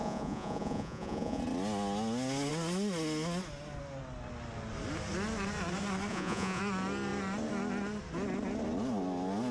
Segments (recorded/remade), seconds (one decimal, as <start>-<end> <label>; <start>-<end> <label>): 0.0-1.4 remade; 1.4-6.1 recorded; 6.1-6.6 remade; 6.6-9.5 recorded